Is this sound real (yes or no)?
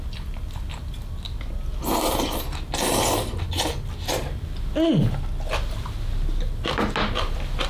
yes